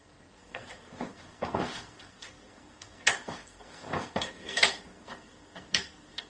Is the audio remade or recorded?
remade